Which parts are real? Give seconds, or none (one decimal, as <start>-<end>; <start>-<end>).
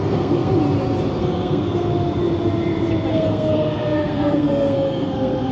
0.5-1.2; 1.9-3.1